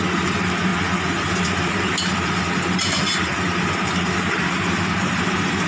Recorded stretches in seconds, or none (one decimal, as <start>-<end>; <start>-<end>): 0.7-1.3